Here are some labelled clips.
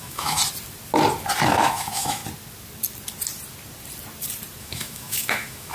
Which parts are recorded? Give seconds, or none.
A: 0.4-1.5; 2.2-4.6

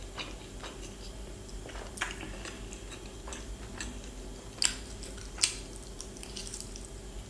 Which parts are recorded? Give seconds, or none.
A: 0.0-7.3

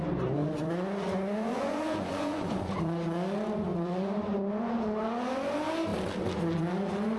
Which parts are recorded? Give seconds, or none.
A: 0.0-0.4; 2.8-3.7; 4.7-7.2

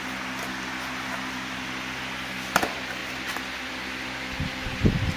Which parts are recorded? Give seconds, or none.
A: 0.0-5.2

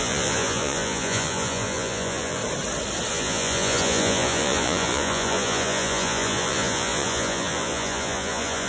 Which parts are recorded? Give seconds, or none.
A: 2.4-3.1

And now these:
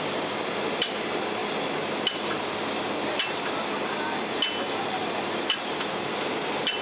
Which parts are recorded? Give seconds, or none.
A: 0.0-6.8